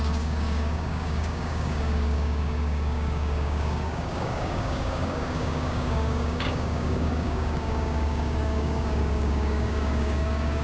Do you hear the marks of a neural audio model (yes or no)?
yes